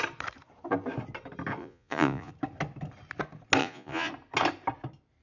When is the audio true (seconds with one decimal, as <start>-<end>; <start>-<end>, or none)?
0.0-1.6; 2.3-3.6; 4.1-5.2

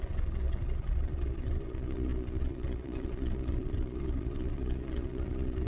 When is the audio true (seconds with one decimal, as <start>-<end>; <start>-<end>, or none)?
none

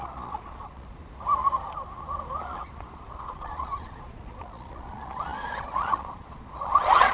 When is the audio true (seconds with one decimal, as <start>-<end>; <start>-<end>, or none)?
1.0-2.4

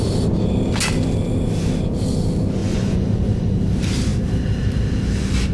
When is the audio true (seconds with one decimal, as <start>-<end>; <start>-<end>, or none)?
0.0-2.6; 3.6-5.5

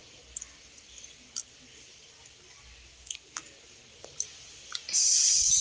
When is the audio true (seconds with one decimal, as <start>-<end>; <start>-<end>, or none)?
0.0-5.6

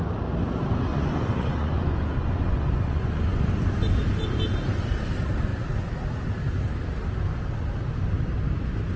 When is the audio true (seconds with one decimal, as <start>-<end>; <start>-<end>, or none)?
0.0-0.9; 3.5-9.0